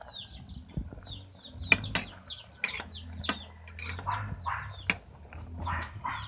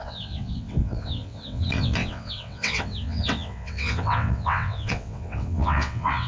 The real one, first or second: first